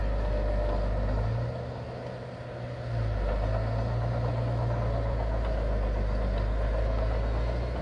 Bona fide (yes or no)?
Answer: yes